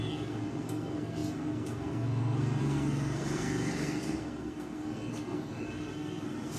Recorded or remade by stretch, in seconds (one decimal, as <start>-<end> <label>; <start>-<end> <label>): 0.0-6.6 remade